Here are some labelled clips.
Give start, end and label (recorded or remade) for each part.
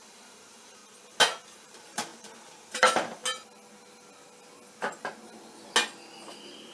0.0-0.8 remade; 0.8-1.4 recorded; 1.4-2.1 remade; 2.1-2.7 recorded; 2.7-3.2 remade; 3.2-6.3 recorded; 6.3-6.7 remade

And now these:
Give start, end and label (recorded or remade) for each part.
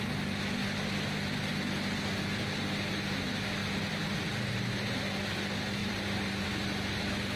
0.0-3.6 recorded; 3.6-5.0 remade; 5.0-5.8 recorded; 5.8-6.5 remade; 6.5-7.4 recorded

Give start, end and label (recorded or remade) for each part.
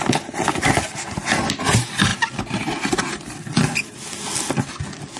0.0-5.2 recorded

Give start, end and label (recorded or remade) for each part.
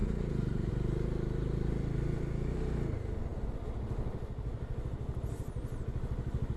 0.0-0.7 remade; 0.7-6.6 recorded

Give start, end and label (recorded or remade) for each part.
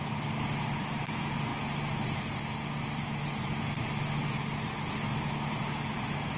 0.0-6.4 recorded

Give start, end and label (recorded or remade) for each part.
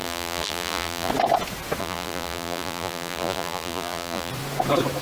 0.0-1.1 remade; 1.1-1.8 recorded; 1.8-4.3 remade; 4.3-5.0 recorded